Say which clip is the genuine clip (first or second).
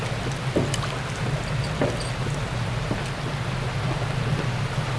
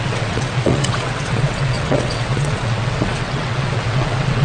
first